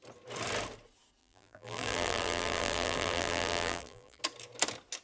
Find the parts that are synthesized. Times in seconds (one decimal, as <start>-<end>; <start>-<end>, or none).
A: 1.2-4.2

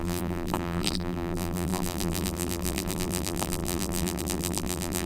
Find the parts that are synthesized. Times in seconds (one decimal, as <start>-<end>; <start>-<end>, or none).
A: 0.0-5.1

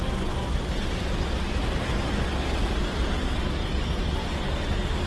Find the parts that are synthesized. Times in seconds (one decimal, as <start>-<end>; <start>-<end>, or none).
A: none

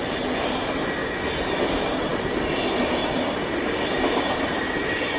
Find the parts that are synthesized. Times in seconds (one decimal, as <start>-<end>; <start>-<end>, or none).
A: none

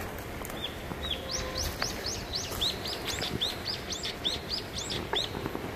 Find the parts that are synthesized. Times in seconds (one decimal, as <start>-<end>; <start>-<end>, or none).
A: none

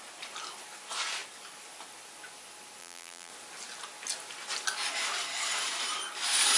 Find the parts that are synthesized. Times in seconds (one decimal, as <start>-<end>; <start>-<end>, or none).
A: 2.8-3.3